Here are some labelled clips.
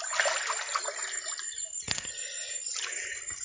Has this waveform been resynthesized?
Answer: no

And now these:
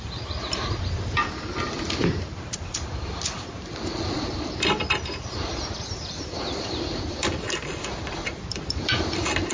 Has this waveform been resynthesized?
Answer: yes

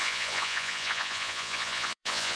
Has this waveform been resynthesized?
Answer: yes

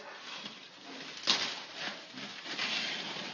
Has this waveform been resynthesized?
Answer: no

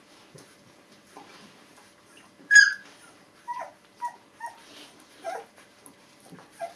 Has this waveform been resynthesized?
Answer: yes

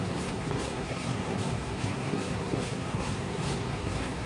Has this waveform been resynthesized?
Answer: yes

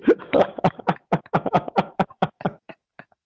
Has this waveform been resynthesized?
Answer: yes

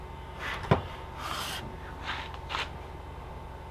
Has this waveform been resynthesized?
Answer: no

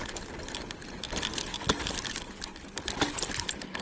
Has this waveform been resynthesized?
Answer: no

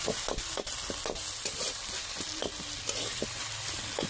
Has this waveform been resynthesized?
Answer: no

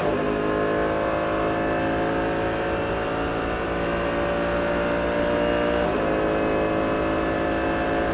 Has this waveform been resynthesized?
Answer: no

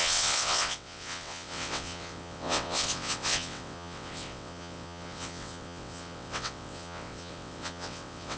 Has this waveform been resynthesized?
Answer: yes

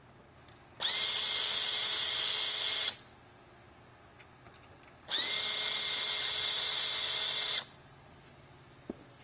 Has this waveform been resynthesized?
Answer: no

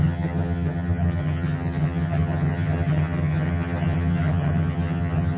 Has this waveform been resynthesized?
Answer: yes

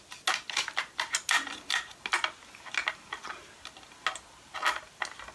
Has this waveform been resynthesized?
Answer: no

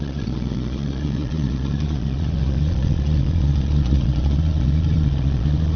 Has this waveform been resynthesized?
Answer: yes